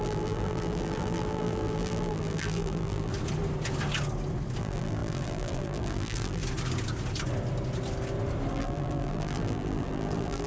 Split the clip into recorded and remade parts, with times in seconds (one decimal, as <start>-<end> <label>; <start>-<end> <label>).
0.0-3.1 remade; 3.1-4.6 recorded; 4.6-6.4 remade; 6.4-8.5 recorded; 8.5-10.5 remade